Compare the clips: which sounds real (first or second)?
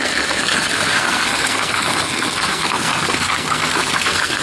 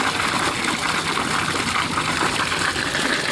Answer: second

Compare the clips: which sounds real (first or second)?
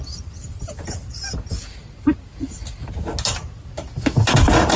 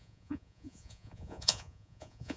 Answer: first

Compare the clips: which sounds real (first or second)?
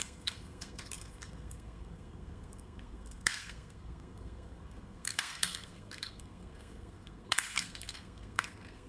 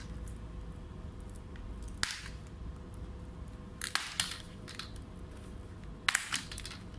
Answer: second